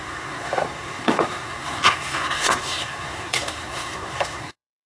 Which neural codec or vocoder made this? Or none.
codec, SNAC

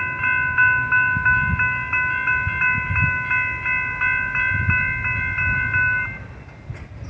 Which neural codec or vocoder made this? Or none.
none